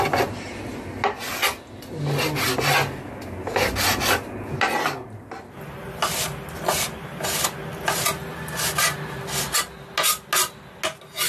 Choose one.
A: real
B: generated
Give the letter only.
A